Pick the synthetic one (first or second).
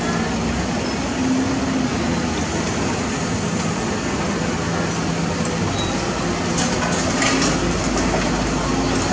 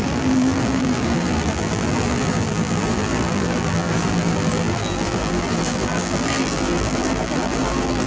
second